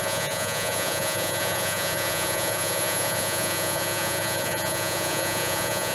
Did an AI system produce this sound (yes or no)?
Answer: yes